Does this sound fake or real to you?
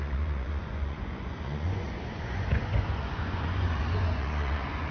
fake